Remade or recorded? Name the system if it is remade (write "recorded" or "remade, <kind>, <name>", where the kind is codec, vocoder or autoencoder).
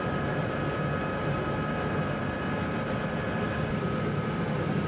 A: recorded